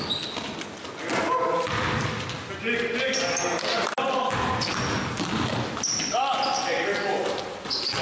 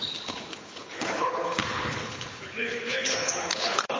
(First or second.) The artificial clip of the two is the second